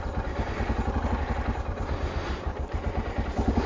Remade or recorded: recorded